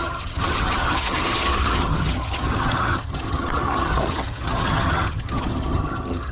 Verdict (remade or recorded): remade